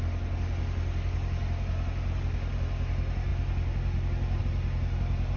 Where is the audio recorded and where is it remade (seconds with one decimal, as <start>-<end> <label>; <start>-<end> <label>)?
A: 0.0-5.4 recorded